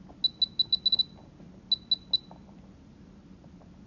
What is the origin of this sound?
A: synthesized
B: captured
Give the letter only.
B